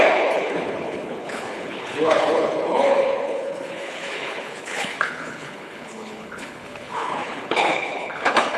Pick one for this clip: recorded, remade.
remade